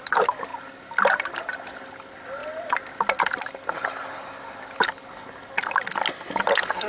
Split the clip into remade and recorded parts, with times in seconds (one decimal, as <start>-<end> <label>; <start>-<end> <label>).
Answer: 0.0-6.9 recorded